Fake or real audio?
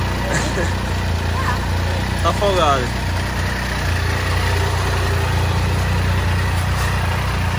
real